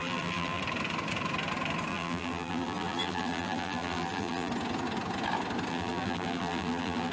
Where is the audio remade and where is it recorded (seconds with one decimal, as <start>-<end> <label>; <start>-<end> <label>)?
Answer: 0.0-0.6 remade; 0.6-1.9 recorded; 1.9-4.5 remade; 4.5-5.7 recorded; 5.7-7.1 remade